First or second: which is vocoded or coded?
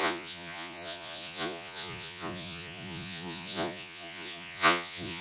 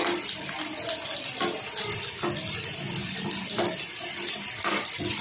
first